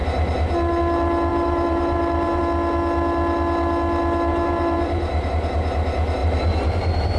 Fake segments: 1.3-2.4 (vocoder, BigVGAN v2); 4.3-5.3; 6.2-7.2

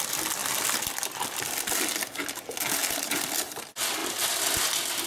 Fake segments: 2.8-3.6 (vocoder, BigVGAN v2); 4.0-5.1